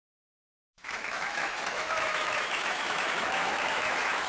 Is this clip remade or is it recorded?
remade